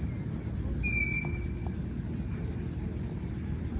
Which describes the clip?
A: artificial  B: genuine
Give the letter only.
B